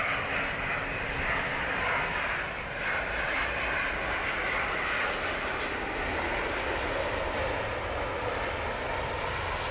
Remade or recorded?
recorded